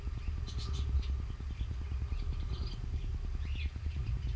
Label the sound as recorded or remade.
recorded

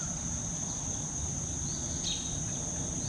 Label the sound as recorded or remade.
recorded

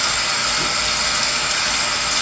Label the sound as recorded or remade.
recorded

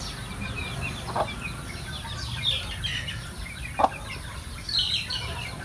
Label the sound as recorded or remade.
recorded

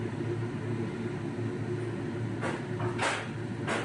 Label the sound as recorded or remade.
recorded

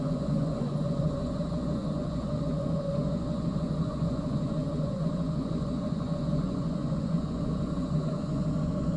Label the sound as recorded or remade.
remade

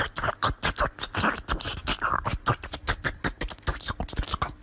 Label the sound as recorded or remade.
recorded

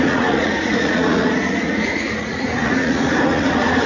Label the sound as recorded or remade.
remade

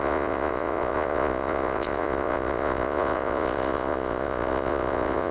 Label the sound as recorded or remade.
remade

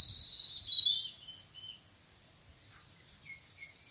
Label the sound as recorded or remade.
recorded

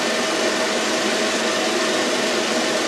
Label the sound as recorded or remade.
recorded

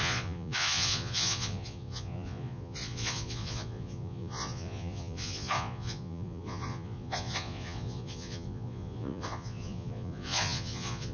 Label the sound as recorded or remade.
remade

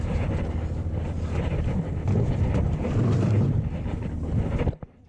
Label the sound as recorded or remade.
recorded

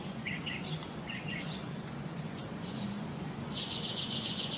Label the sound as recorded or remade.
remade